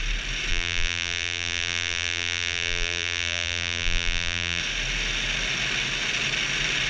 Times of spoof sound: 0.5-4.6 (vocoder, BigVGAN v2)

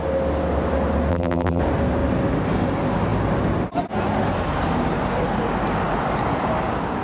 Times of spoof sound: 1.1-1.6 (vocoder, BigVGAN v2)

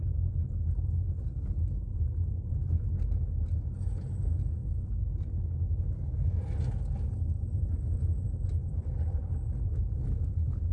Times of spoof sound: 4.6-5.1 (vocoder, BigVGAN v2); 8.6-9.2

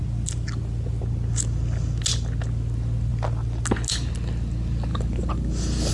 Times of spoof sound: 4.9-5.9 (vocoder, BigVGAN v2)

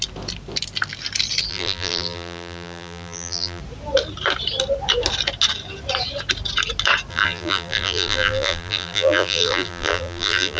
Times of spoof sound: 1.5-3.6 (vocoder, BigVGAN v2); 7.1-10.6

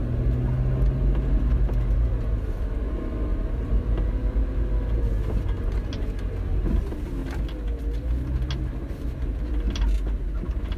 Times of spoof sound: 3.3-3.8 (vocoder, BigVGAN v2)